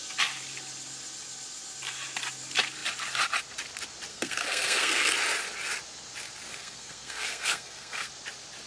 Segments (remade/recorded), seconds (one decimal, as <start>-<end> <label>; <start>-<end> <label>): 0.0-4.1 recorded; 4.1-5.1 remade; 5.1-6.5 recorded; 6.5-8.1 remade; 8.1-8.7 recorded